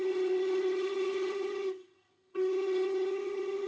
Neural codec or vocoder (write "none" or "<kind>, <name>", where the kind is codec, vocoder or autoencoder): vocoder, HiFi-GAN